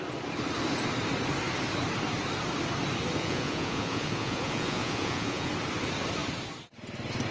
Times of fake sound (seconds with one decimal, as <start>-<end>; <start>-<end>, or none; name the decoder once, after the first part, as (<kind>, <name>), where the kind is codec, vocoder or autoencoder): 3.2-5.5 (vocoder, Vocos)